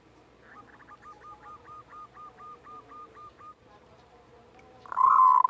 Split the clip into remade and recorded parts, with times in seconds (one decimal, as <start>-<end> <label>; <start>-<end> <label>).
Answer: 0.0-1.8 recorded; 1.8-5.1 remade; 5.1-5.5 recorded